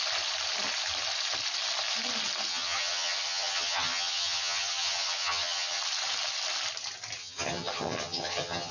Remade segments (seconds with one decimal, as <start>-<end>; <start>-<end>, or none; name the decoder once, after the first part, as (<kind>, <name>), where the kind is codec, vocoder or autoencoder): 2.5-5.8 (vocoder, HiFi-GAN); 7.2-8.7